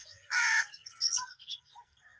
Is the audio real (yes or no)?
no